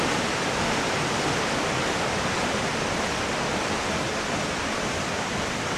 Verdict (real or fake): real